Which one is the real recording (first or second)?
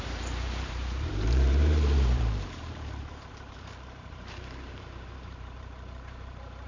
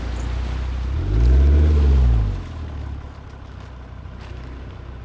second